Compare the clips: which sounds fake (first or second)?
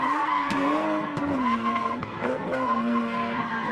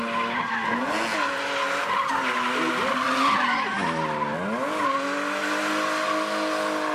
first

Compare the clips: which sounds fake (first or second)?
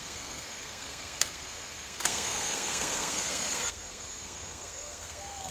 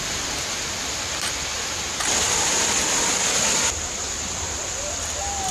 first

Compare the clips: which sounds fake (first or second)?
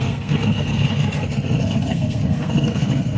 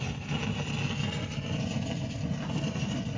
first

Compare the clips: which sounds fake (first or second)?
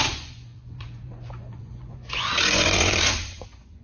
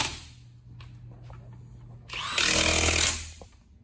first